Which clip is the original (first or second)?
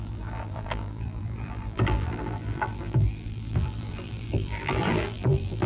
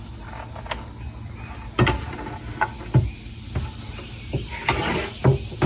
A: second